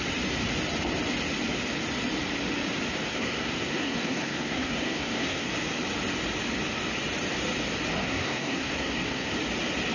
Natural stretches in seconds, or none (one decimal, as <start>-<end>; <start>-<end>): 0.0-3.1; 5.5-8.0; 9.3-9.9